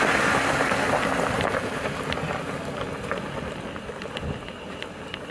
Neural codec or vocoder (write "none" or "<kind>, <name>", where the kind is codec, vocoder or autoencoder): none